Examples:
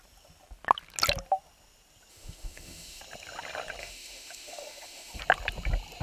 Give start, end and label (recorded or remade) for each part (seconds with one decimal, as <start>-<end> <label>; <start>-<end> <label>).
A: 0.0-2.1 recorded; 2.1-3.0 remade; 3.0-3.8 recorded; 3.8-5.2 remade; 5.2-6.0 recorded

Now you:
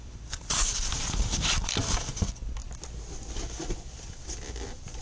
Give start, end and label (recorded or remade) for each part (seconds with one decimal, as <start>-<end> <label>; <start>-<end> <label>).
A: 0.0-0.6 remade; 0.6-1.2 recorded; 1.2-2.6 remade; 2.6-3.3 recorded; 3.3-5.0 remade

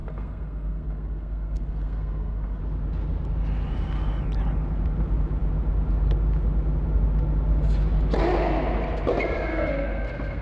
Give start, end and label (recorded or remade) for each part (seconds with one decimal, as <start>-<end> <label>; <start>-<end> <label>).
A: 0.0-2.6 remade; 2.6-9.5 recorded; 9.5-10.4 remade